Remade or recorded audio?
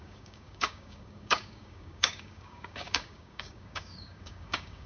remade